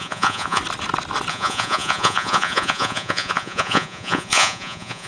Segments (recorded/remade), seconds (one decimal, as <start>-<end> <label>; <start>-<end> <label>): 0.0-0.6 remade; 0.6-1.3 recorded; 1.3-5.1 remade